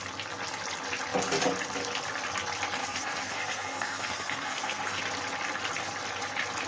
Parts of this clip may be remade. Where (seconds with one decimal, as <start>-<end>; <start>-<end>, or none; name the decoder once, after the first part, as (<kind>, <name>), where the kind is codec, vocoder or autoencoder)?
2.8-5.0 (codec, SNAC)